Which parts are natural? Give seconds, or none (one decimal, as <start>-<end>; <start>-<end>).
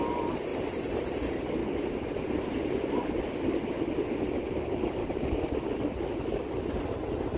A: 0.0-0.5; 1.2-5.0; 6.1-7.4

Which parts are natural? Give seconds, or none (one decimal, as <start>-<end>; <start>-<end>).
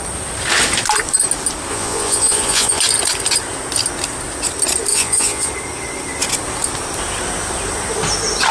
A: 0.0-1.7; 2.8-4.9; 5.5-8.5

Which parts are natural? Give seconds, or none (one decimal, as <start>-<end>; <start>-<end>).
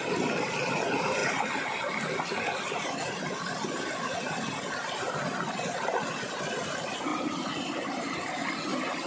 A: 0.0-7.1; 8.0-9.1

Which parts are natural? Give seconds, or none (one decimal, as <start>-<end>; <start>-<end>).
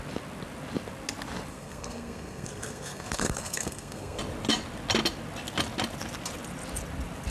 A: 0.0-1.5; 4.2-7.3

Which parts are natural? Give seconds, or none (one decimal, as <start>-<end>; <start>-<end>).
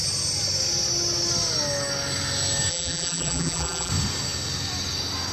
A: 0.0-2.7; 3.9-5.3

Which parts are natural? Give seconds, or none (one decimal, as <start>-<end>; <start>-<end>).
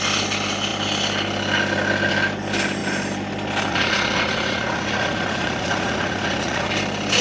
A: 0.0-3.7; 6.7-7.2